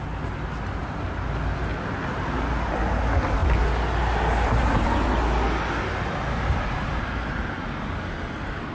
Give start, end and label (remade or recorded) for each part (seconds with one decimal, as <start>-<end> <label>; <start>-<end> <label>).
0.0-8.7 recorded